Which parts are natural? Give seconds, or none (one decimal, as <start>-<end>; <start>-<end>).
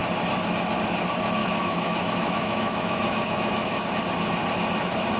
0.0-1.4; 4.0-5.2